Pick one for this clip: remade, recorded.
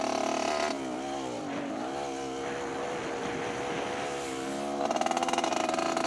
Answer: recorded